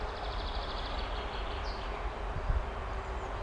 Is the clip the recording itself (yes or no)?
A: yes